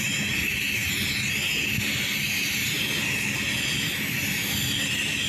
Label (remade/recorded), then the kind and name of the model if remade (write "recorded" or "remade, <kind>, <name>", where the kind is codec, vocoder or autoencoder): recorded